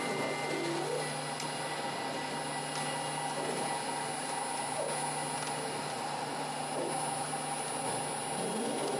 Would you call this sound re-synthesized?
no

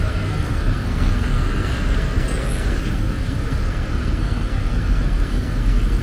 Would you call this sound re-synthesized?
yes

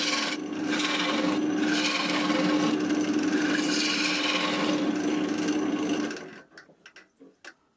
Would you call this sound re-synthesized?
no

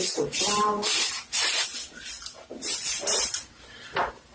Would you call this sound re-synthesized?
no